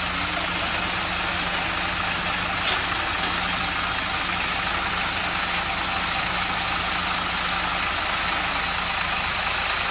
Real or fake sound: real